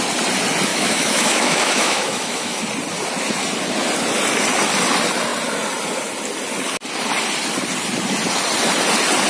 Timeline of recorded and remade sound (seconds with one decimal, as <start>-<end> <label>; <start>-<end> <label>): 0.0-0.7 recorded; 0.7-2.6 remade; 2.6-9.3 recorded